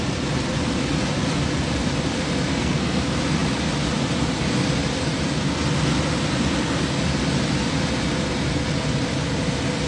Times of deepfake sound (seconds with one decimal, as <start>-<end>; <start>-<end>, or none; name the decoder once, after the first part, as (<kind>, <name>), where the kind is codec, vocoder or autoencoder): 2.5-3.0 (codec, SNAC)